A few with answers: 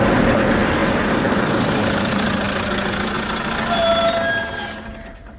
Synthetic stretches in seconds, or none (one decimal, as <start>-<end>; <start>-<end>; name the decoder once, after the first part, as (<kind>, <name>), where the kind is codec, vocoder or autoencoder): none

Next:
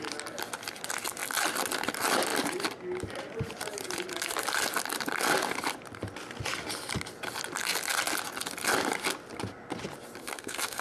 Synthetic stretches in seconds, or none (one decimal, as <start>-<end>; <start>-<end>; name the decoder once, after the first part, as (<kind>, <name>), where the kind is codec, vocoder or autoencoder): 10.2-10.8 (codec, SNAC)

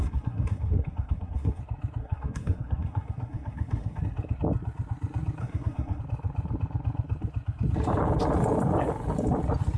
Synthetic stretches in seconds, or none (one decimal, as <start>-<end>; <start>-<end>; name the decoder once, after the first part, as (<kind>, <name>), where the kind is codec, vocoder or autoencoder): 0.0-1.6 (codec, SNAC); 2.0-4.0; 5.4-6.0